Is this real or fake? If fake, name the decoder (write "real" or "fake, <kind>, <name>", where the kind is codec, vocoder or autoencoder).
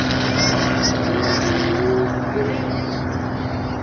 real